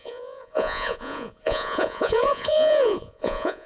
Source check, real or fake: fake